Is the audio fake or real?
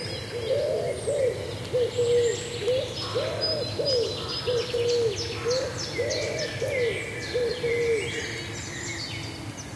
real